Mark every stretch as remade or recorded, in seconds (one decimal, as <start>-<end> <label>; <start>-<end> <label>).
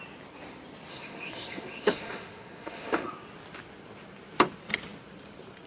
0.0-0.9 recorded; 0.9-3.1 remade; 3.1-5.7 recorded